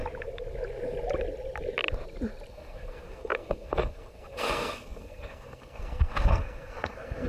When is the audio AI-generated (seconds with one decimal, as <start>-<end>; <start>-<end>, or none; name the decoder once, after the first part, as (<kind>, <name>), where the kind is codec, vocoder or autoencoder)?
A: 2.5-7.3 (codec, SNAC)